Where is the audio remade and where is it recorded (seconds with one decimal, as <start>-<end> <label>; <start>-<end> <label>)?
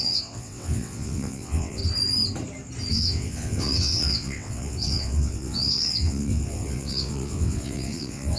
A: 0.0-1.8 remade; 1.8-2.9 recorded; 2.9-8.4 remade